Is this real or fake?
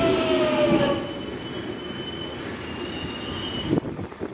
real